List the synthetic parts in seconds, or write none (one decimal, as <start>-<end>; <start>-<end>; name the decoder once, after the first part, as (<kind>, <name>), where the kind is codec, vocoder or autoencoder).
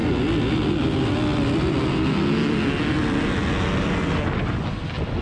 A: none